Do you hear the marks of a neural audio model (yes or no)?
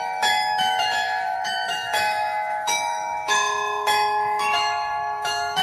yes